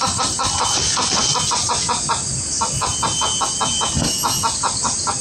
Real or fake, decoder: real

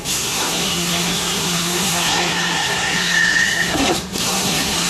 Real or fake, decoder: fake, codec, SNAC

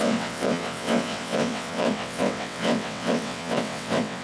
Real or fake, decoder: fake, vocoder, WaveNeXt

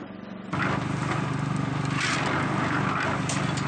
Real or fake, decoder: real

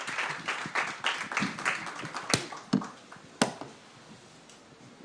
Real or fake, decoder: real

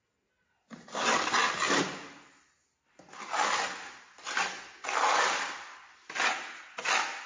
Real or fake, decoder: real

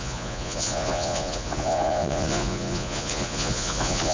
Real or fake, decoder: fake, vocoder, Vocos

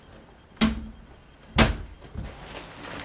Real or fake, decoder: real